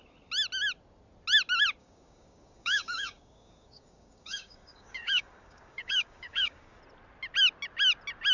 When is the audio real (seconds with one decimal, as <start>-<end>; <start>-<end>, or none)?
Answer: 0.0-1.8; 6.8-8.3